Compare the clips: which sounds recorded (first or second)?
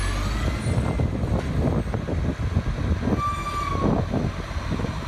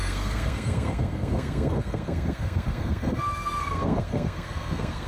first